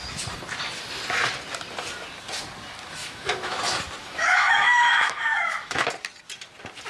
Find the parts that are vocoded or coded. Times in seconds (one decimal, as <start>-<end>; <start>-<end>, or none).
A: 3.0-3.6; 4.0-5.8